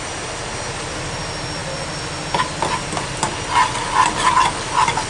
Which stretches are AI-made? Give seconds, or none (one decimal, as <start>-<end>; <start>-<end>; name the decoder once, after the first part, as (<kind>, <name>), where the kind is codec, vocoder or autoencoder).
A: none